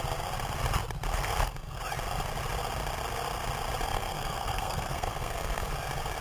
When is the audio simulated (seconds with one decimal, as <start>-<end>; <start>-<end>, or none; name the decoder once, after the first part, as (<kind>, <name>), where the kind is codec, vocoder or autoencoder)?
1.1-1.8 (codec, SNAC); 3.9-5.7